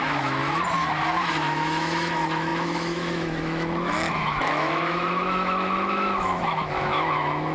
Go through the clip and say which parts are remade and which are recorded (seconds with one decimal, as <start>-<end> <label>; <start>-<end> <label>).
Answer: 0.0-0.4 remade; 0.4-1.3 recorded; 1.3-7.5 remade